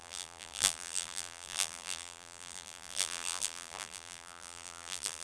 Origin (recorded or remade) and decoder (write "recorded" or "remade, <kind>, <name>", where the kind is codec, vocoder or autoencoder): remade, vocoder, BigVGAN v2